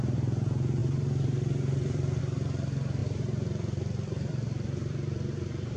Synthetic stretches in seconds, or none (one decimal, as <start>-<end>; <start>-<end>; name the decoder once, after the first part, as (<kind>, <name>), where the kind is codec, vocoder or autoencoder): 0.8-2.2 (vocoder, BigVGAN v2); 3.0-5.8